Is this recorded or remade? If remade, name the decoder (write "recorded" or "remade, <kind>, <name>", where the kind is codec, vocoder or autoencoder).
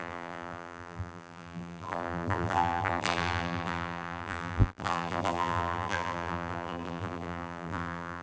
remade, vocoder, BigVGAN v2